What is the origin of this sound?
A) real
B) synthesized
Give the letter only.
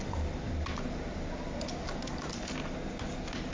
A